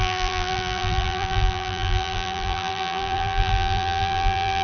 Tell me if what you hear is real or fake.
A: fake